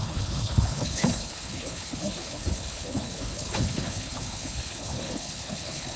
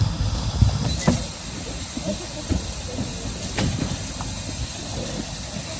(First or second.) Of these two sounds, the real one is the second